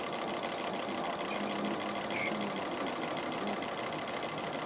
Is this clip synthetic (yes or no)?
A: no